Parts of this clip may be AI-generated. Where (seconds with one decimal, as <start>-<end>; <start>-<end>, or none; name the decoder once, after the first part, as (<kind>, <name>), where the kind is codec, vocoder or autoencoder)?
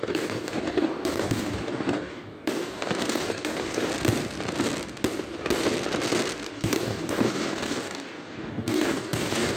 0.0-3.9 (codec, DAC); 6.5-9.6